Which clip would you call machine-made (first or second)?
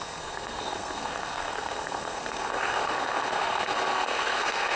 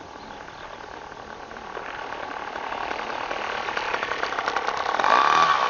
first